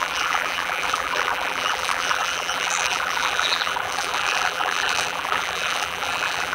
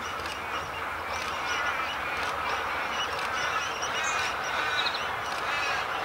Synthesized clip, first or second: first